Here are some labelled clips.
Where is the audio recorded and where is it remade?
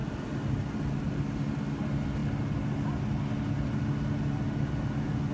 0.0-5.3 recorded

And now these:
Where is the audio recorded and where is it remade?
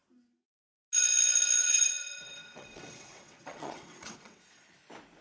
0.0-1.6 recorded; 1.6-4.7 remade; 4.7-5.2 recorded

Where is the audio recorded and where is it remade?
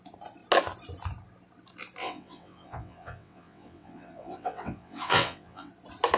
0.0-2.0 recorded; 2.0-5.7 remade; 5.7-6.2 recorded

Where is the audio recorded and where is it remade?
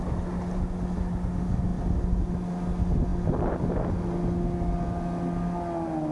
0.0-6.1 recorded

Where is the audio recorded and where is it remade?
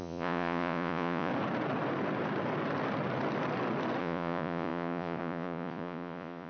0.0-1.3 remade; 1.3-4.0 recorded; 4.0-6.5 remade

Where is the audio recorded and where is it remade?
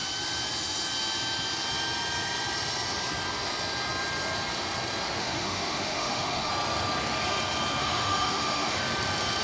0.0-5.2 recorded; 5.2-6.5 remade; 6.5-7.8 recorded; 7.8-8.8 remade; 8.8-9.4 recorded